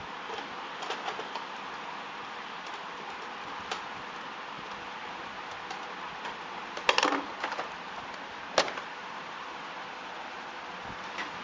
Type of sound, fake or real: real